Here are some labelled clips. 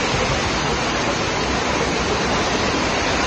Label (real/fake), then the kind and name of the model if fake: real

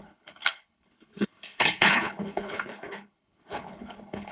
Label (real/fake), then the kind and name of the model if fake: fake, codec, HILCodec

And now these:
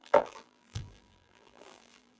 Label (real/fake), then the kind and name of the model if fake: fake, vocoder, BigVGAN v2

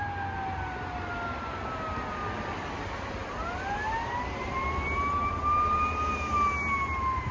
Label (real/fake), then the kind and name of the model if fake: real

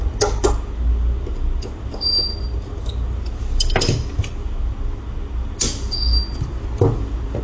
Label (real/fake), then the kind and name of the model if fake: real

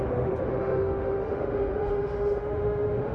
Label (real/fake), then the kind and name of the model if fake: fake, autoencoder, DAC-VAE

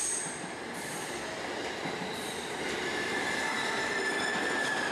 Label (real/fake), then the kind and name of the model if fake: fake, vocoder, BigVGAN v2